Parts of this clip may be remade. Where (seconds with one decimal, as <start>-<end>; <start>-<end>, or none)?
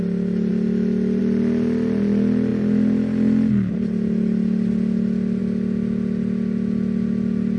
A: none